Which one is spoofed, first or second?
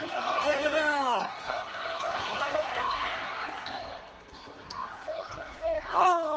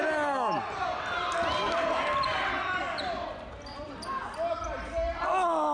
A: first